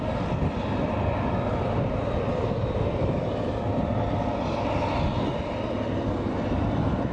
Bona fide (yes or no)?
yes